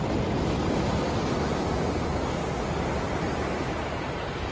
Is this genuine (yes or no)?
yes